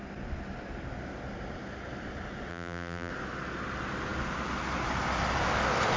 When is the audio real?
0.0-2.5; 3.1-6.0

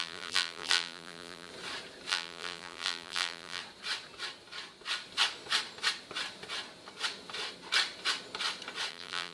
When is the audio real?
1.5-2.1; 3.6-8.9

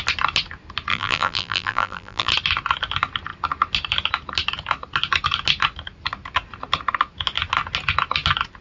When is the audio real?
0.0-0.9; 2.3-8.6